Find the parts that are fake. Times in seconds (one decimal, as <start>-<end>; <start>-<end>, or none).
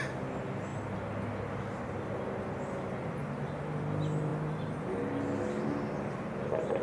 none